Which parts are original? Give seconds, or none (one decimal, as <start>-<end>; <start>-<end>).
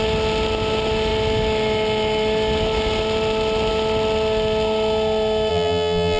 0.0-5.5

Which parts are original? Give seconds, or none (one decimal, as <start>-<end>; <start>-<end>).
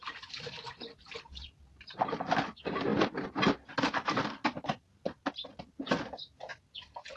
0.0-7.2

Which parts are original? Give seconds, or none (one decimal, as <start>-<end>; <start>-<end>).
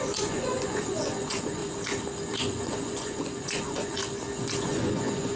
1.6-2.3; 4.0-4.6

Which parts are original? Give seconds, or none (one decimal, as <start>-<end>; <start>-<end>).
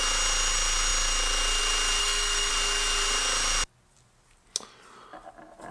0.0-2.0; 2.5-5.7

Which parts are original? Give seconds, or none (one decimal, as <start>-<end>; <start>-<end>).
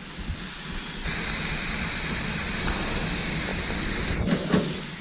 0.0-5.0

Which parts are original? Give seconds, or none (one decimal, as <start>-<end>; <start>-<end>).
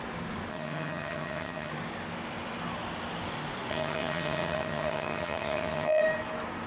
0.0-0.5; 1.7-3.7; 6.0-6.7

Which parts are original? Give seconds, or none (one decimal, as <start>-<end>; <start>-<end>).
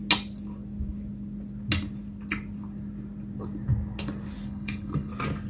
0.0-4.4; 5.1-5.5